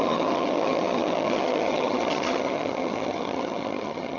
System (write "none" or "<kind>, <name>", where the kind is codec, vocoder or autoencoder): vocoder, HiFi-GAN